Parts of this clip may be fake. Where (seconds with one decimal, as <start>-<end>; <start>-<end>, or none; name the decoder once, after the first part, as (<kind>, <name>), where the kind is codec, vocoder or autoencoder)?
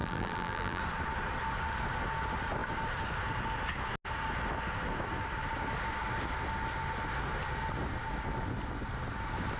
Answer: 0.0-0.8 (vocoder, BigVGAN v2)